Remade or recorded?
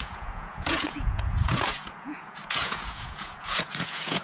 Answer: remade